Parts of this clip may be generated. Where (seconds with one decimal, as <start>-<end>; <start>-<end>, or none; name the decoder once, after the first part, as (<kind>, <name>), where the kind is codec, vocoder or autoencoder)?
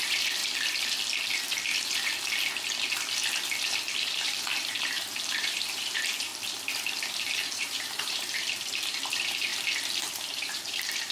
0.0-0.4 (vocoder, BigVGAN v2); 4.1-6.3; 7.1-9.5; 10.1-11.1